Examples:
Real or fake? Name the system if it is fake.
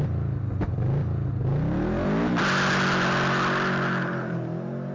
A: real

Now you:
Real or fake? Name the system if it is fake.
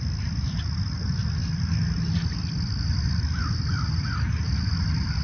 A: real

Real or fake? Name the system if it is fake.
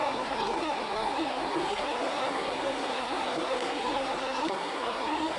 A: fake, codec, SNAC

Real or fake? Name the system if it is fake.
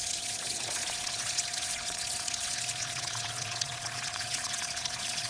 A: fake, vocoder, Vocos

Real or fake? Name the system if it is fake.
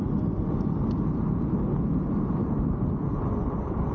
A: real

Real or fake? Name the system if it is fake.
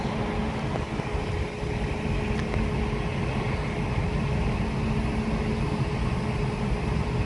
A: real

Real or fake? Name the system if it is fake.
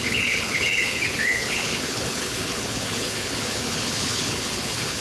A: fake, codec, HILCodec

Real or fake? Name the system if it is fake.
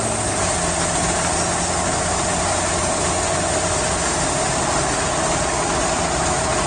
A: real